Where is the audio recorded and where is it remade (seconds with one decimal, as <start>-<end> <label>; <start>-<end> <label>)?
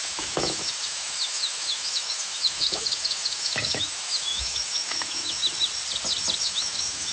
0.0-5.4 remade; 5.4-6.4 recorded; 6.4-7.1 remade